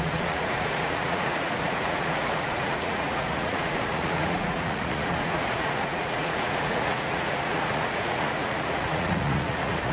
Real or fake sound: fake